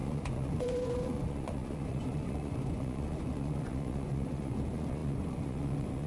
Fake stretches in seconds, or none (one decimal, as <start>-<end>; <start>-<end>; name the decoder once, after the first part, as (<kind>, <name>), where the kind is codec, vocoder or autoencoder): 0.0-6.1 (vocoder, Vocos)